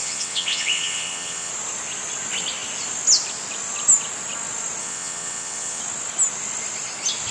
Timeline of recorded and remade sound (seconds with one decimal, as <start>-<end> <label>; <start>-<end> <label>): 0.0-1.5 remade; 1.5-4.8 recorded; 4.8-5.8 remade; 5.8-7.3 recorded